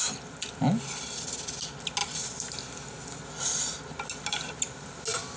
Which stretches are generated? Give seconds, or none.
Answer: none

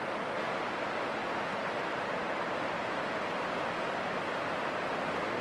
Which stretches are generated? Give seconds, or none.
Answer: none

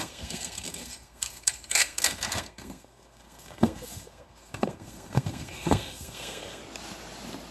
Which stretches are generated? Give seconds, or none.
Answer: 0.0-6.6 (codec, SNAC)

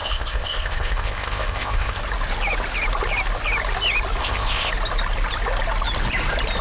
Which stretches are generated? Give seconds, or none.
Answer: 0.0-2.0 (codec, ZipCodec); 4.2-4.7

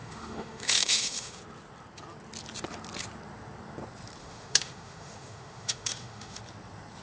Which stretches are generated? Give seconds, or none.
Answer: 0.0-1.4 (autoencoder, DAC-VAE); 4.2-6.4